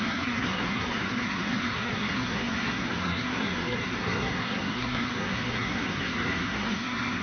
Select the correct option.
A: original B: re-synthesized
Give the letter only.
B